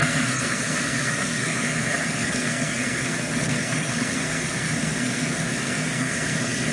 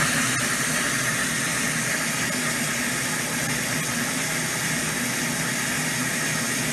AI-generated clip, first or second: first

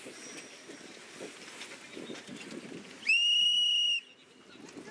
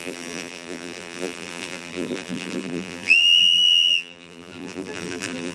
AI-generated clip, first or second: second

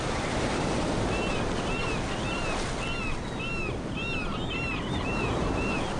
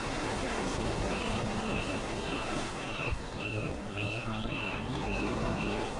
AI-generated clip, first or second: second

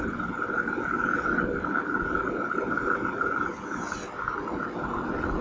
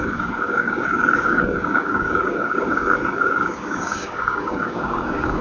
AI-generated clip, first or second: second